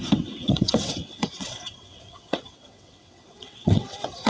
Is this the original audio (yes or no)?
no